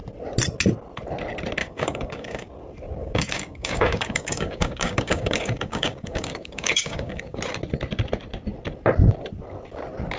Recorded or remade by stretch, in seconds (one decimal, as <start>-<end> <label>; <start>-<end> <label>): 0.0-1.6 recorded; 1.6-2.5 remade; 2.5-3.0 recorded; 3.0-7.4 remade; 7.4-10.2 recorded